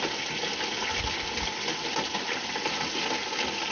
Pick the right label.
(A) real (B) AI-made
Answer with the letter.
A